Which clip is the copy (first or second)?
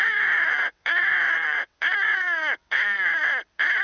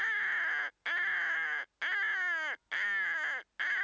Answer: first